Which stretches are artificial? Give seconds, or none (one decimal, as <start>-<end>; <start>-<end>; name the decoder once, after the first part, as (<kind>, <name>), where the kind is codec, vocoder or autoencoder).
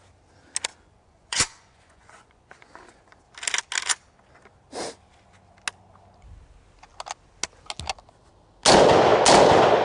0.7-3.2 (vocoder, Vocos)